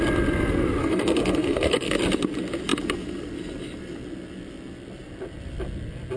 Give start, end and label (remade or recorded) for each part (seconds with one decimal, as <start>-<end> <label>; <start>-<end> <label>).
0.0-0.8 recorded; 0.8-1.9 remade; 1.9-6.2 recorded